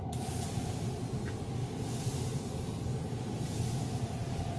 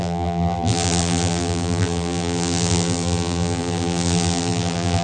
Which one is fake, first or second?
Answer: second